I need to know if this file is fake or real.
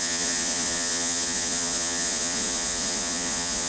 fake